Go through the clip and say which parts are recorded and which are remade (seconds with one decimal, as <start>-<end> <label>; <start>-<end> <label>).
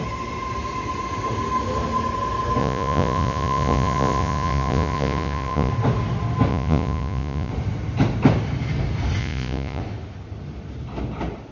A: 0.0-2.6 recorded; 2.6-5.7 remade; 5.7-6.5 recorded; 6.5-7.5 remade; 7.5-9.2 recorded; 9.2-9.8 remade; 9.8-11.5 recorded